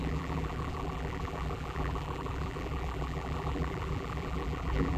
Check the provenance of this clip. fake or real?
fake